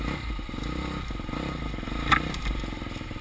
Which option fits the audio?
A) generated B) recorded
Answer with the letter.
B